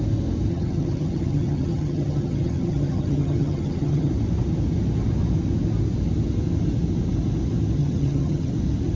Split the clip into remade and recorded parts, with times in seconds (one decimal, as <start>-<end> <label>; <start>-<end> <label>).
0.0-0.5 recorded; 0.5-4.1 remade; 4.1-7.8 recorded; 7.8-8.5 remade; 8.5-9.0 recorded